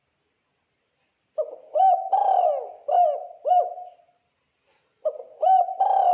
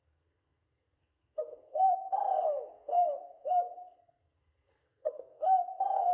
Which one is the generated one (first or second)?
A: second